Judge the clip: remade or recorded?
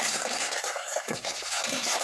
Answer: remade